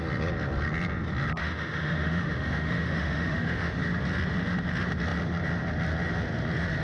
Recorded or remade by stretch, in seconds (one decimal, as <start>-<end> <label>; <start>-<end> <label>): 0.0-1.4 recorded; 1.4-3.8 remade; 3.8-6.8 recorded